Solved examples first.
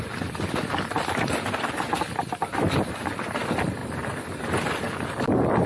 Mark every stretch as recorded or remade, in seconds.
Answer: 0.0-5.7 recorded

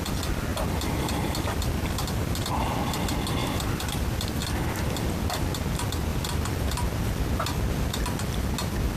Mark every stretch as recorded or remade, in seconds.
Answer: 0.0-0.5 recorded; 0.5-2.3 remade; 2.3-3.4 recorded; 3.4-4.7 remade; 4.7-9.0 recorded

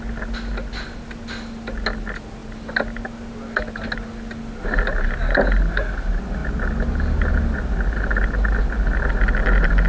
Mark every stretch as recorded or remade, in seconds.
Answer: 0.0-9.9 recorded

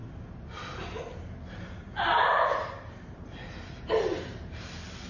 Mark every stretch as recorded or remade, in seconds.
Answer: 0.0-1.5 recorded; 1.5-5.1 remade